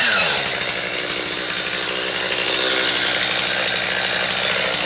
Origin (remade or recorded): recorded